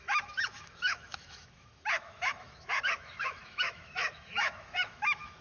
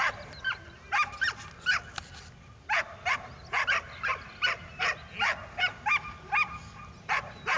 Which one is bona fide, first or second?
second